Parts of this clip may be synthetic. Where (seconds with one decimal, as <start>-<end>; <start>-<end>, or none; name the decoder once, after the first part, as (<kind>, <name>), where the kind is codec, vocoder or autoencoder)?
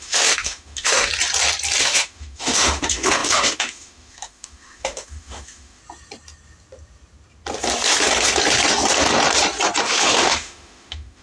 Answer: 0.0-1.1 (autoencoder, DAC-VAE); 1.8-5.8; 9.8-11.2